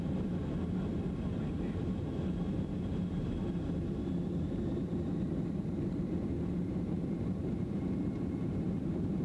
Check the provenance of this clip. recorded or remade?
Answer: remade